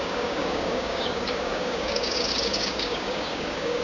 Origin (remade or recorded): remade